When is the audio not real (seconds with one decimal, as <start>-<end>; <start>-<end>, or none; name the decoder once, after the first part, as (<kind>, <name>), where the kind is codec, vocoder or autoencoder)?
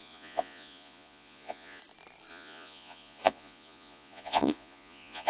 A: 0.0-1.8 (vocoder, Vocos); 2.3-5.3